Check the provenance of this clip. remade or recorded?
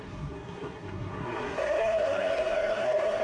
remade